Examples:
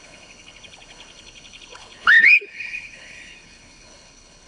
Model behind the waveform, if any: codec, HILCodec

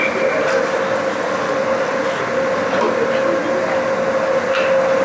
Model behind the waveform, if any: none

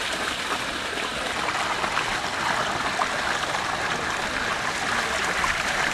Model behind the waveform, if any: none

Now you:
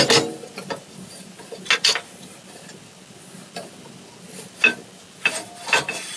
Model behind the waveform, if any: none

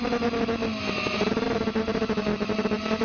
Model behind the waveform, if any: none